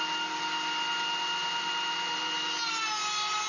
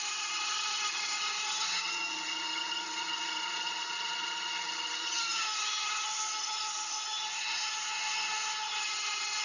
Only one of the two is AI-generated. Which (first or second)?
second